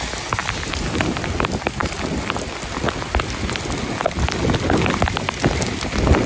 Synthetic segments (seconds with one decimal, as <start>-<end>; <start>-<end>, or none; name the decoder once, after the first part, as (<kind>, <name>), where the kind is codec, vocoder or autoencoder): none